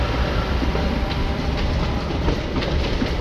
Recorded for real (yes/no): no